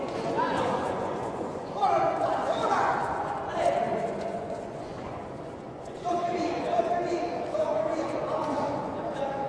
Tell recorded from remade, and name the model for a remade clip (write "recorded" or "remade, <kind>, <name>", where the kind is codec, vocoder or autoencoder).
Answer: remade, vocoder, Vocos